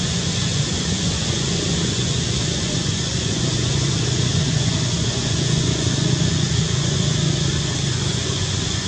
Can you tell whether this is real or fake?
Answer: fake